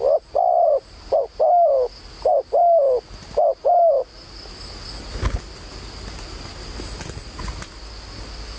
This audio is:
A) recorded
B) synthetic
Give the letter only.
A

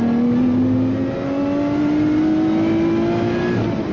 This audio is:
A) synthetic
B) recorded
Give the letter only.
B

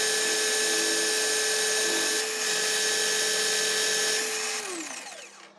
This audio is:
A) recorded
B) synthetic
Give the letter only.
A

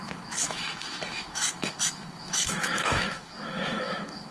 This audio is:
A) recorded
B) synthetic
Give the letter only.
B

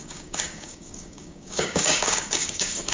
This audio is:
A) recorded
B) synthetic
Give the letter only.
B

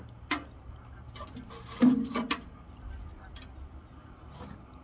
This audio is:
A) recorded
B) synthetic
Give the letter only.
A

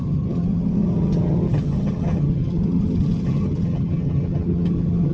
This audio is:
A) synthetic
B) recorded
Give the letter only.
A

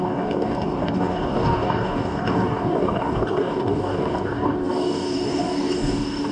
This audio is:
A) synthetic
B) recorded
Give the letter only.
A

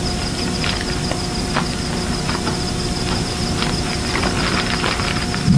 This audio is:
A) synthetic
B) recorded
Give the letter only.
B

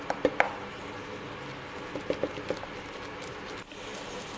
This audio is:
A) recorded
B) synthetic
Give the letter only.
A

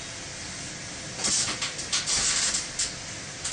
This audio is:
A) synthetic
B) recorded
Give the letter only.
B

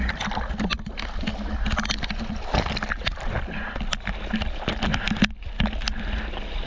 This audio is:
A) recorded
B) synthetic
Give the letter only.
A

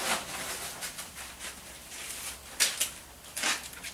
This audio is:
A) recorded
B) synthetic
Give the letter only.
B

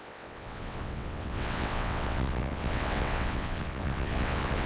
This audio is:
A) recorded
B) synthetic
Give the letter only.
B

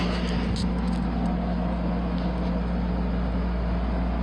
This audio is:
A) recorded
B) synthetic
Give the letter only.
A